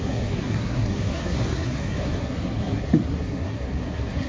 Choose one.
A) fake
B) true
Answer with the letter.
A